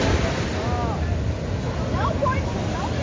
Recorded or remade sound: recorded